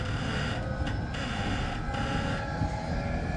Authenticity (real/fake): real